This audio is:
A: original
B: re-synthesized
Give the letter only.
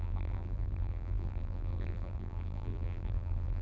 B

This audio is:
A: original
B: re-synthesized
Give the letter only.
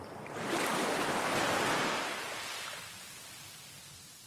A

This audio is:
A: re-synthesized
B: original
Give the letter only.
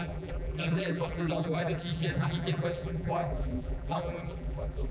A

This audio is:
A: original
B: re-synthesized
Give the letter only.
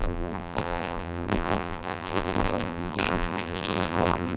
B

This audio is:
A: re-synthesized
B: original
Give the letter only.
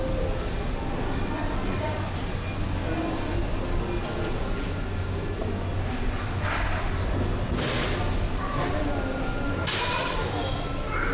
B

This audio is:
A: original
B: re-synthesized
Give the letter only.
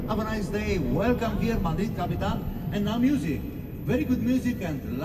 A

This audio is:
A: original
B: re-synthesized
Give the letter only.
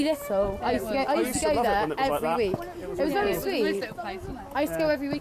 A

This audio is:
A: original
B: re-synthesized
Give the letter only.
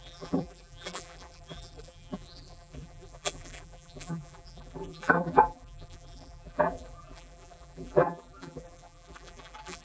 B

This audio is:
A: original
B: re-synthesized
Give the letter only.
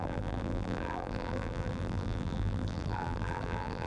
B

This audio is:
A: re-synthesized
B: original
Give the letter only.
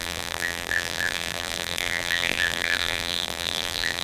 A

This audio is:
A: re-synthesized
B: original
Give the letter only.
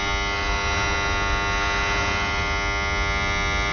B